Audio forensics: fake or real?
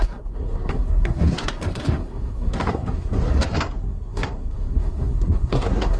fake